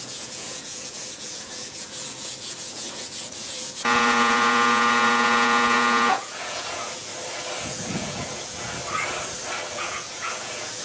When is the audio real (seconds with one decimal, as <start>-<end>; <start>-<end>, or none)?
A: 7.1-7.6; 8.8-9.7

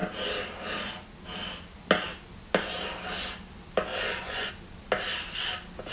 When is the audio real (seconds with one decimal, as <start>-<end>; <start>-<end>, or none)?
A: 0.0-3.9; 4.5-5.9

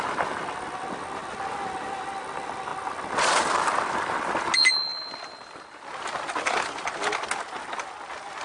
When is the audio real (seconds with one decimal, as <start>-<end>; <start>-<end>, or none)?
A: 0.0-8.4

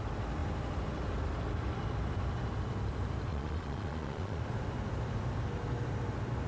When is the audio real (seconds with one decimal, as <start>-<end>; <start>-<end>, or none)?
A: 0.0-3.3; 4.4-6.5